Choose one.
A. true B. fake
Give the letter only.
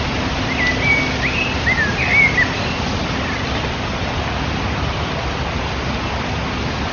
A